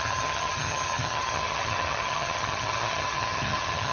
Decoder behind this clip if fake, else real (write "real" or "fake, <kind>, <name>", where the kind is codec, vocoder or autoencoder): fake, vocoder, HiFi-GAN